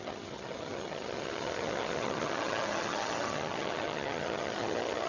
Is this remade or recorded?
remade